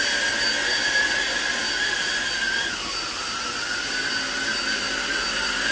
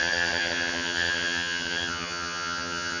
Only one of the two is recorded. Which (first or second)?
first